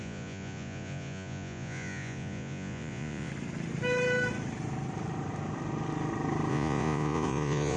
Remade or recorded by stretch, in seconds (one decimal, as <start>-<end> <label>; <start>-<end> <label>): 0.0-3.3 remade; 3.3-6.5 recorded; 6.5-7.8 remade